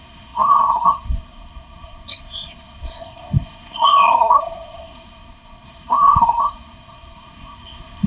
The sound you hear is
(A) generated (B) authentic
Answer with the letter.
A